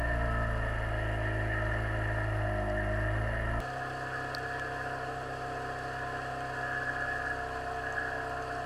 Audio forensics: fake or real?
real